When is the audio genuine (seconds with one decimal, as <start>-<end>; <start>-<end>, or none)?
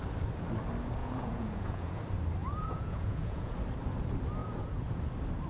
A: 0.0-1.0; 2.0-2.4; 3.5-4.4; 5.0-5.5